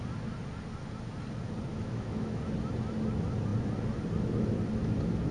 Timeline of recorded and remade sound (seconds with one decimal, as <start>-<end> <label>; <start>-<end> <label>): 0.0-1.7 recorded; 1.7-2.4 remade; 2.4-5.3 recorded